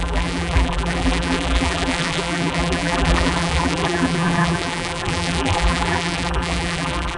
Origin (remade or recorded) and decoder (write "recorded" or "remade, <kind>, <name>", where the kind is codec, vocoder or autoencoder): remade, vocoder, BigVGAN v2